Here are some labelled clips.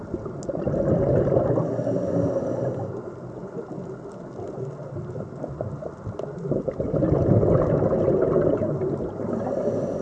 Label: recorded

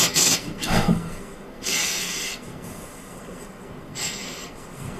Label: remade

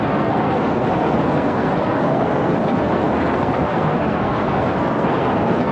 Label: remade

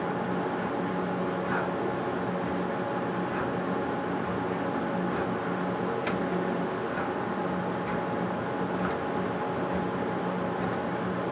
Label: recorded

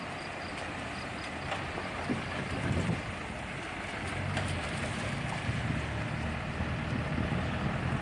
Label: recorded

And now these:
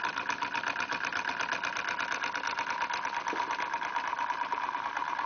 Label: recorded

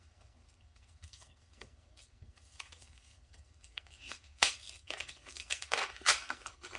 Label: remade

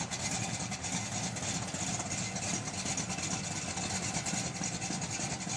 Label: recorded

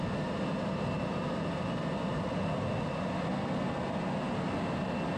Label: recorded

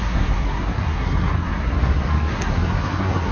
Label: remade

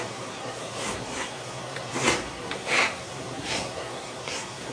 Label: remade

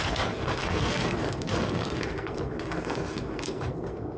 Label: remade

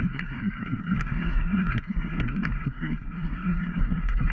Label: remade